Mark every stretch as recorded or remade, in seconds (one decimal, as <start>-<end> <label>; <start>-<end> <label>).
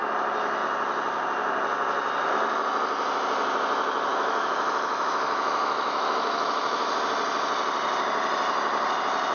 0.0-4.1 recorded; 4.1-6.9 remade; 6.9-9.3 recorded